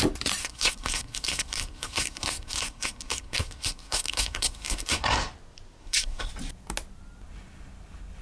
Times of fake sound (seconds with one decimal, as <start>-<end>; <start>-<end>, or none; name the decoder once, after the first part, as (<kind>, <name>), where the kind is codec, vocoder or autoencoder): 0.4-5.3 (codec, SNAC); 5.8-6.3